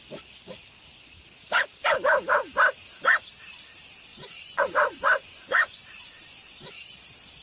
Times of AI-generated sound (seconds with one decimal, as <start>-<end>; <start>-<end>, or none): 4.1-6.7